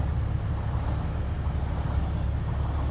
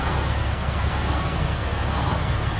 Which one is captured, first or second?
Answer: first